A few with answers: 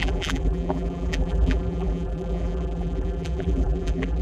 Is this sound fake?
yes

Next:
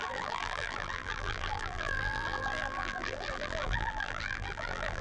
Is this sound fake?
yes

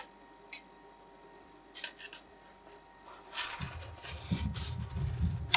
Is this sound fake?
no